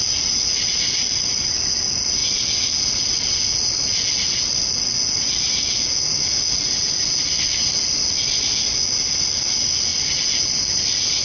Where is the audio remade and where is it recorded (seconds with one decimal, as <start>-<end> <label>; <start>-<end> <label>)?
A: 0.0-11.2 recorded